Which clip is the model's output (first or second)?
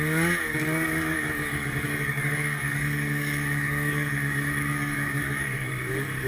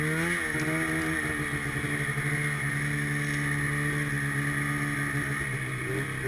first